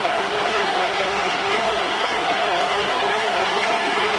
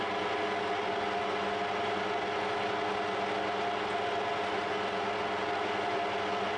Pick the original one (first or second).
second